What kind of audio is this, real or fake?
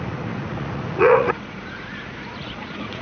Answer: fake